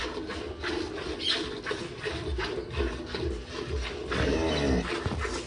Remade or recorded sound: recorded